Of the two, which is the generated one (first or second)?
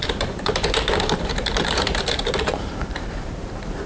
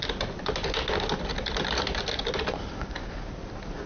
first